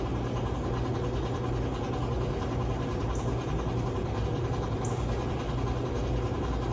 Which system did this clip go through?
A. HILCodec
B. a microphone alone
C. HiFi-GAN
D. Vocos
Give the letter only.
B